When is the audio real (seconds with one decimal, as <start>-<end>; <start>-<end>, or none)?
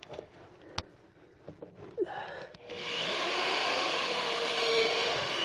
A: 0.4-2.6